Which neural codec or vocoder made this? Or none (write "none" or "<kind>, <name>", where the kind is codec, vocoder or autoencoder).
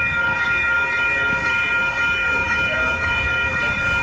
codec, DAC